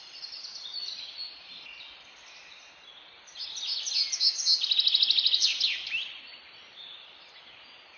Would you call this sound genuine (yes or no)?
yes